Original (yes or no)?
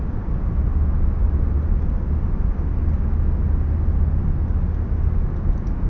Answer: yes